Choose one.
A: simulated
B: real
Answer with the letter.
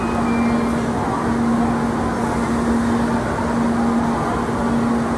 B